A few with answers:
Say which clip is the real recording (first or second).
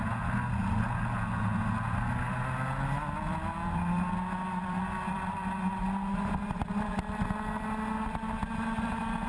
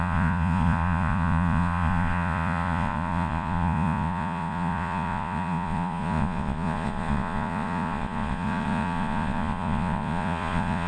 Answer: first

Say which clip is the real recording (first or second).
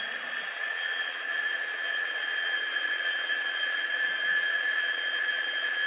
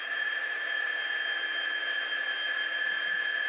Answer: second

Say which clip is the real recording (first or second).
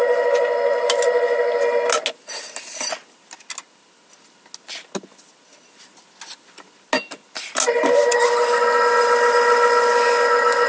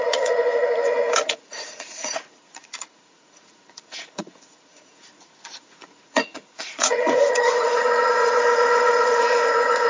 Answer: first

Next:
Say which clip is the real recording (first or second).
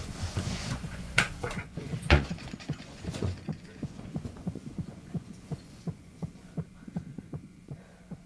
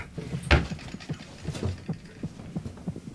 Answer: second